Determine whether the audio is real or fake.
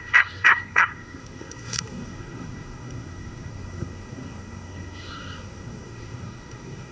fake